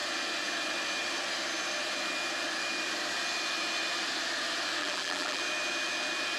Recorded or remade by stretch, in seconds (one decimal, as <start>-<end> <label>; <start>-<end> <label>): 0.0-4.8 recorded; 4.8-5.4 remade; 5.4-6.4 recorded